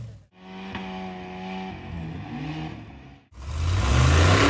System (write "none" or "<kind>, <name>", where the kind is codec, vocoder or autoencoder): none